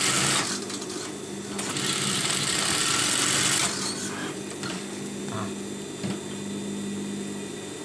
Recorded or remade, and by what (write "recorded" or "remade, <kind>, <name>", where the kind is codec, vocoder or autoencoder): recorded